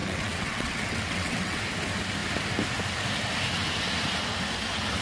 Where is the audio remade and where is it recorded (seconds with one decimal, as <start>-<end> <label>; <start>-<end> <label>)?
0.0-1.6 remade; 1.6-5.0 recorded